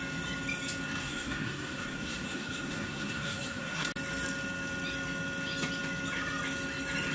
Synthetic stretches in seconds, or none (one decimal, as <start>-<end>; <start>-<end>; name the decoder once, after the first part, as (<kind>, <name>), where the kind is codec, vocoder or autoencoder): 1.0-3.9 (codec, SNAC)